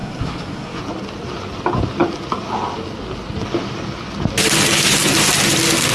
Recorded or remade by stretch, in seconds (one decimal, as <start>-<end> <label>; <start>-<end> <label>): 0.0-0.8 remade; 0.8-5.9 recorded